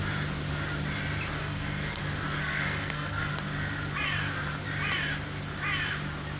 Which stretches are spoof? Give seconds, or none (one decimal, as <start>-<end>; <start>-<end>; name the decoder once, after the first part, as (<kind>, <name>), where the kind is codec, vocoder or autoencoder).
1.4-2.0 (codec, SNAC); 2.4-3.3